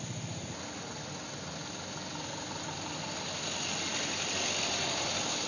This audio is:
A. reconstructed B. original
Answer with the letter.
B